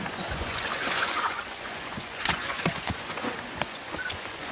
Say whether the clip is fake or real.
fake